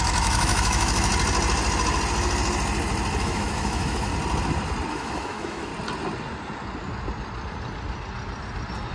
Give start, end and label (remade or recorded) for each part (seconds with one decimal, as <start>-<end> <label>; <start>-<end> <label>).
0.0-1.1 remade; 1.1-3.2 recorded; 3.2-4.1 remade; 4.1-4.9 recorded; 4.9-5.7 remade; 5.7-8.9 recorded